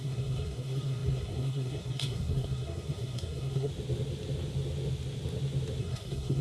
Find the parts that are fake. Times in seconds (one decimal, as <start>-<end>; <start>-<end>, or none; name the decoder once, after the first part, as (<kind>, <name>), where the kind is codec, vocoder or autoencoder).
0.0-3.7 (codec, SNAC); 5.8-6.4